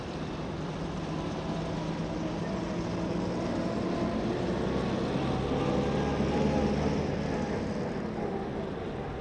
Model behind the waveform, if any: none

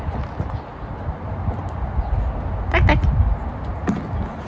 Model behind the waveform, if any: none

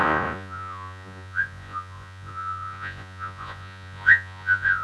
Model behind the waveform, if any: vocoder, Vocos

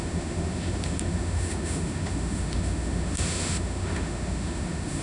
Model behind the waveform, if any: autoencoder, DAC-VAE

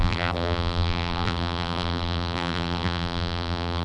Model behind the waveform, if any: vocoder, BigVGAN v2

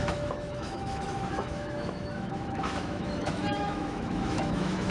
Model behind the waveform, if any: autoencoder, DAC-VAE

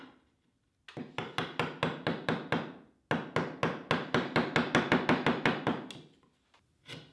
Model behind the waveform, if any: none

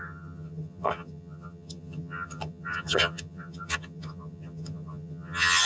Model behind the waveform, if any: vocoder, HiFi-GAN